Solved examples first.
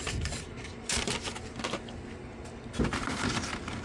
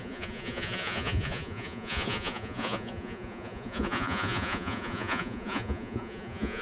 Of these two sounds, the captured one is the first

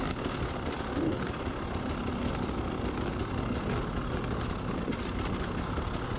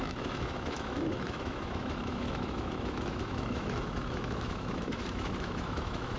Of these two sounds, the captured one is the first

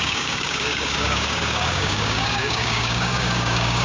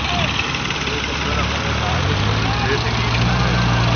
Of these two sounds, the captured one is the second